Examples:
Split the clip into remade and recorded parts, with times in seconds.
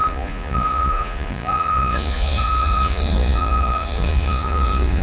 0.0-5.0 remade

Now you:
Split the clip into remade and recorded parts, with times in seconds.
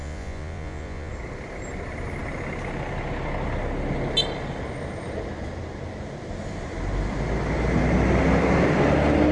0.0-1.1 remade; 1.1-9.3 recorded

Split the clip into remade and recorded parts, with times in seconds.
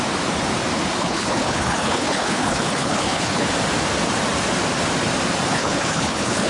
0.0-1.0 recorded; 1.0-3.5 remade; 3.5-5.5 recorded; 5.5-6.5 remade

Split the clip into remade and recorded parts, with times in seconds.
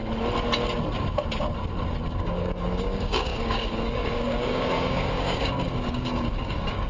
0.0-2.2 recorded; 2.2-6.9 remade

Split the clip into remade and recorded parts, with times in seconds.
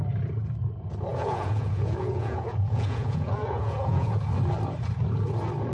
0.0-1.1 recorded; 1.1-4.2 remade; 4.2-5.7 recorded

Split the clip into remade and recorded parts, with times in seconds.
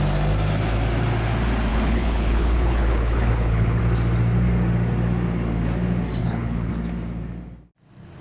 0.0-1.7 recorded; 1.7-3.8 remade; 3.8-6.2 recorded; 6.2-6.7 remade; 6.7-8.2 recorded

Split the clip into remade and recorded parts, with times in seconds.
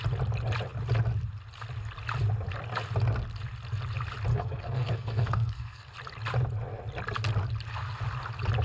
0.0-4.3 recorded; 4.3-5.9 remade; 5.9-8.6 recorded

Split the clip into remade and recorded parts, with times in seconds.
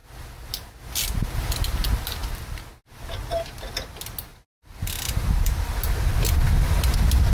0.0-4.3 recorded; 4.3-5.7 remade; 5.7-7.3 recorded